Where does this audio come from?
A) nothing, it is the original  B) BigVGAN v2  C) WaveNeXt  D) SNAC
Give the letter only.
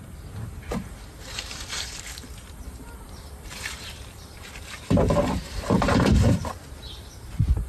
B